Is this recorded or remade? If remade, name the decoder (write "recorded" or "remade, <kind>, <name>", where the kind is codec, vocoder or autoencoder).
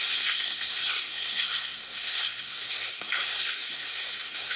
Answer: remade, codec, SNAC